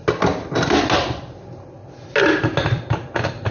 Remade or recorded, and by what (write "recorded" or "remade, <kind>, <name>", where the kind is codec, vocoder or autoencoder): recorded